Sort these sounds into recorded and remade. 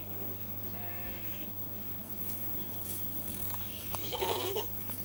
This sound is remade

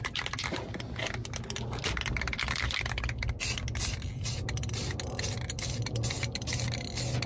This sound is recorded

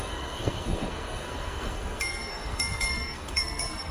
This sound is remade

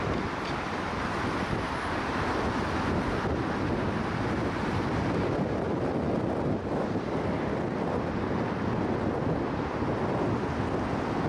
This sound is recorded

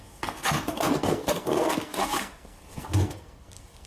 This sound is remade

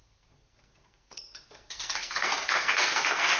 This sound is remade